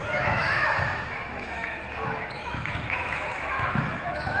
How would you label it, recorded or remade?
remade